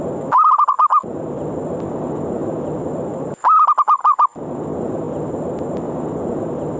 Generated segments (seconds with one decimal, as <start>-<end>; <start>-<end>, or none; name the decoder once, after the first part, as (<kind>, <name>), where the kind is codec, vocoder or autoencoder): none